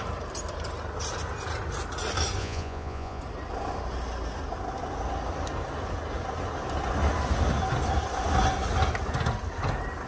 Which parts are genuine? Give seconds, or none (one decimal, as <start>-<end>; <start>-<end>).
0.0-2.4; 3.2-10.1